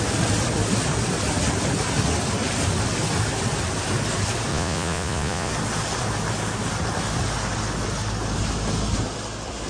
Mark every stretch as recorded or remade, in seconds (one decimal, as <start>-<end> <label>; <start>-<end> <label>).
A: 0.0-4.5 recorded; 4.5-5.5 remade; 5.5-9.7 recorded